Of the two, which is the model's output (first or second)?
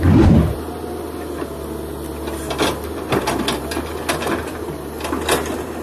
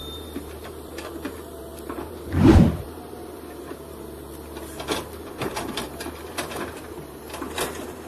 second